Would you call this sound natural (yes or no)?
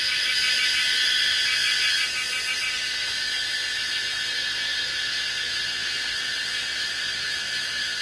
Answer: no